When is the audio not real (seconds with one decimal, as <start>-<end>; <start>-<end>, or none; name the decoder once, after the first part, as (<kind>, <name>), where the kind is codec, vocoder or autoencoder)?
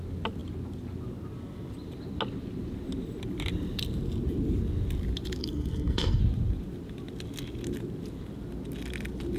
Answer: 5.4-6.2 (codec, SNAC)